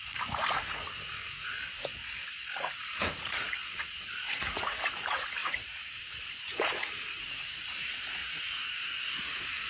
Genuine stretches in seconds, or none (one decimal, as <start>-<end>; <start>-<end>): 8.2-9.1